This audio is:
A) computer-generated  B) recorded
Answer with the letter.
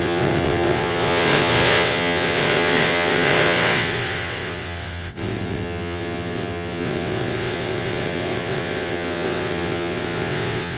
A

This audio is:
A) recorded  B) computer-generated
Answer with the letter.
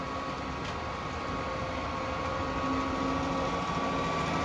A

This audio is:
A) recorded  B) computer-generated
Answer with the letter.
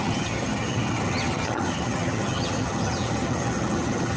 B